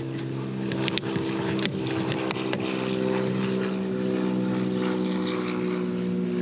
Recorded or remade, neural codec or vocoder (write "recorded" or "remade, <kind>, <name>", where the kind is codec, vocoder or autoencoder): recorded